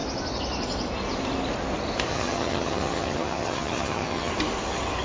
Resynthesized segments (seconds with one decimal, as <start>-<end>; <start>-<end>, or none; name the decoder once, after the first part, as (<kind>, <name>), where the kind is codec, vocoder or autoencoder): 2.1-4.3 (vocoder, HiFi-GAN)